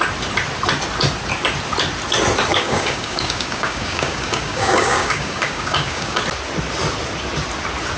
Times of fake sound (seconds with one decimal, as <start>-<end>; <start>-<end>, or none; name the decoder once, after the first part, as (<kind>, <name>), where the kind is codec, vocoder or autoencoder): 2.5-6.2 (codec, DAC)